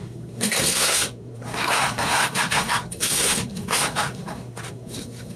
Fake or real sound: fake